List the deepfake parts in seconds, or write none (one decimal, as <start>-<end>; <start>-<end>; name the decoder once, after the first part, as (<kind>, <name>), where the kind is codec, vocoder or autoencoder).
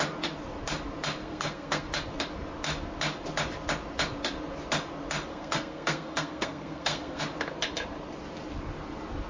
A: 1.2-1.9 (codec, SNAC); 5.3-7.2